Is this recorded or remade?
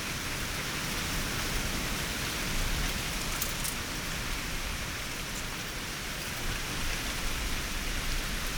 recorded